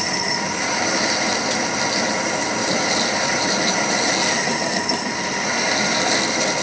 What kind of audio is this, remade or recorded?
recorded